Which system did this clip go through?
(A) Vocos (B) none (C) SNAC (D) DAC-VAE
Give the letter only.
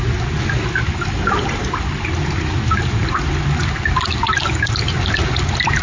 B